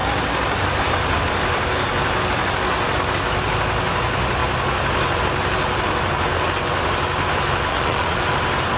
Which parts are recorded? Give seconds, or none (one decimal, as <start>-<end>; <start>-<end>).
0.0-7.7; 8.2-8.8